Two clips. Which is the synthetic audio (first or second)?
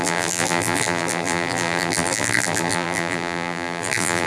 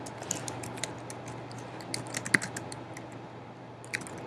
first